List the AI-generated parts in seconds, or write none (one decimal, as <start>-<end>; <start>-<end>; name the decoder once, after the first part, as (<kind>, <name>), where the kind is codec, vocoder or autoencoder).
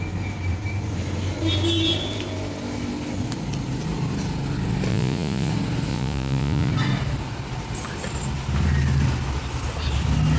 4.9-5.5 (vocoder, Vocos); 5.9-6.7